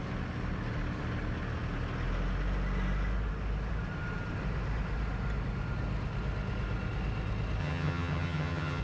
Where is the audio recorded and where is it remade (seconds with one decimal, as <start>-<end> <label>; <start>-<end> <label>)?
0.0-7.6 recorded; 7.6-8.8 remade